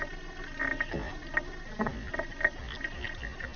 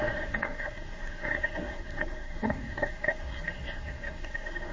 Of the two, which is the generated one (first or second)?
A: second